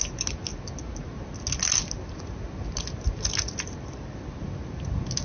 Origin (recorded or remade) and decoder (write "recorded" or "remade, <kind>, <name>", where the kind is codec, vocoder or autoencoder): recorded